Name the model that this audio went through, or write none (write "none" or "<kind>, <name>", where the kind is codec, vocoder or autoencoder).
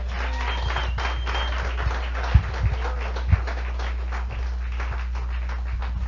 none